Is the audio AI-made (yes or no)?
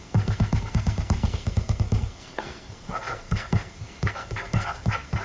yes